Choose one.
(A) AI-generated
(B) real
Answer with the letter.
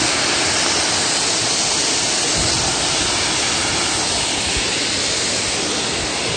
B